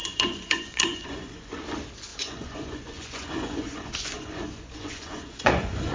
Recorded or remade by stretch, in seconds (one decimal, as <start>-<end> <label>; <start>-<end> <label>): 0.0-1.5 remade; 1.5-2.1 recorded; 2.1-5.9 remade